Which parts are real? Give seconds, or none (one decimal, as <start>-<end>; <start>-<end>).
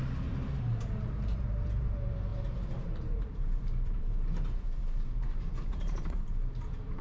none